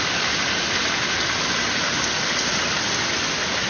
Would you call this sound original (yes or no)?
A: yes